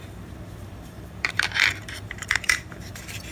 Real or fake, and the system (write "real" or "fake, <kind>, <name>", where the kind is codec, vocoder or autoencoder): fake, vocoder, BigVGAN v2